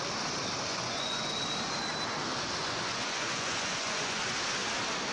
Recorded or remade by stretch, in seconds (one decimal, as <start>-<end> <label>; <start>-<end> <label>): 0.0-0.7 recorded; 0.7-1.4 remade; 1.4-2.6 recorded; 2.6-4.2 remade; 4.2-5.1 recorded